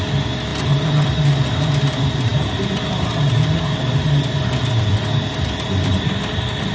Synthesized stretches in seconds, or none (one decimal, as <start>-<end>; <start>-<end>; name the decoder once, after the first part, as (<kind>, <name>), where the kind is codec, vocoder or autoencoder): 0.5-1.1 (vocoder, BigVGAN v2)

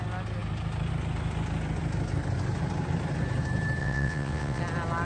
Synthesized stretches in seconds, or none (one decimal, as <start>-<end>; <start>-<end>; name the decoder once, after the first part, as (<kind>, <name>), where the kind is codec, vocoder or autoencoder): 3.8-4.6 (vocoder, WaveNeXt)

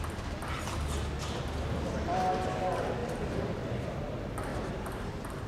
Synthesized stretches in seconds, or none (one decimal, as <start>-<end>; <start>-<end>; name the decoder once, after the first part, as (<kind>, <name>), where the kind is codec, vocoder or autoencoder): 3.0-3.7 (vocoder, BigVGAN v2); 4.5-5.1

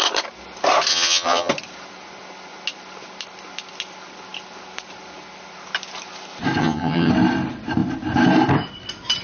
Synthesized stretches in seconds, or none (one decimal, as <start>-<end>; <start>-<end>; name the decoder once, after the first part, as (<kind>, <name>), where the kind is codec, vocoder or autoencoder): 0.9-1.5 (vocoder, HiFi-GAN); 6.6-7.1

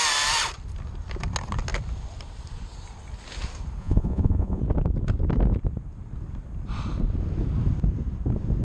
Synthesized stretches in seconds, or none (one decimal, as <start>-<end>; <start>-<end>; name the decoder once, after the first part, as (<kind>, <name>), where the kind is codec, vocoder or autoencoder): 3.8-4.6 (vocoder, Vocos)

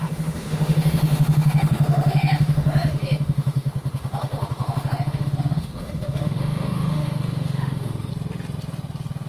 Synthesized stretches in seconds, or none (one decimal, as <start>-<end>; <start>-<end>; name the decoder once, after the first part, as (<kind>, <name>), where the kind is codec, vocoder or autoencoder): 0.0-8.1 (autoencoder, DAC-VAE)